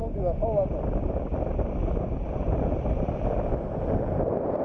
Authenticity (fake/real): real